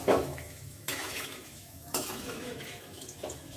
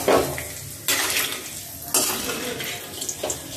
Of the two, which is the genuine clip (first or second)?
second